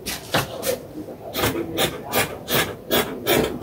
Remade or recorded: recorded